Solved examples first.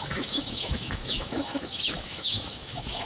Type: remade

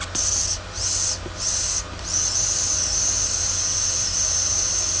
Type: recorded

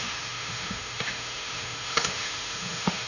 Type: remade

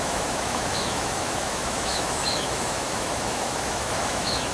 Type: remade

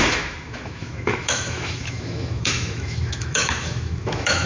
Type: remade